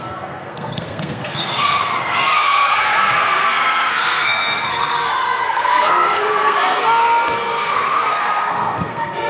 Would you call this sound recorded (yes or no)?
no